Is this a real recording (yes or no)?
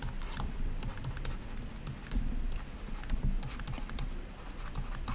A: yes